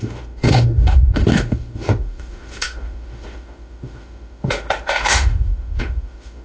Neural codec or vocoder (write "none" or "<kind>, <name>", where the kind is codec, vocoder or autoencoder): autoencoder, DAC-VAE